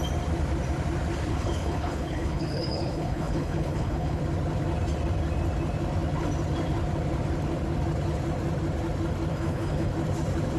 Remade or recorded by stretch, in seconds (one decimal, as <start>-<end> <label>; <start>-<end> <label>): 0.0-1.3 recorded; 1.3-4.2 remade; 4.2-9.3 recorded; 9.3-9.9 remade; 9.9-10.6 recorded

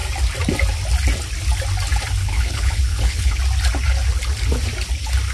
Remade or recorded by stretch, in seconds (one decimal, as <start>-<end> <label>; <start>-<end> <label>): 0.0-2.2 recorded; 2.2-3.4 remade; 3.4-5.3 recorded

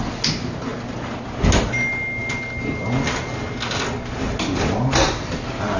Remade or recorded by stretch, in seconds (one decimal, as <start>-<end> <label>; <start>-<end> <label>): 0.0-5.8 recorded

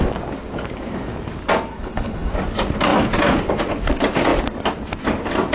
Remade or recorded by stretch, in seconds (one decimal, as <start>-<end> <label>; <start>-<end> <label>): 0.0-1.7 recorded; 1.7-2.3 remade; 2.3-5.5 recorded